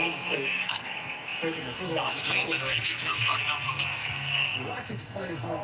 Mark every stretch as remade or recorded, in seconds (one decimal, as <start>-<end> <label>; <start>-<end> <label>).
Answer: 0.0-5.6 remade